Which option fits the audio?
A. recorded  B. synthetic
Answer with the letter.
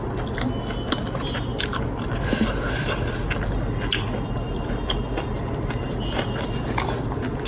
A